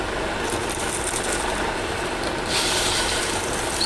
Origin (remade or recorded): remade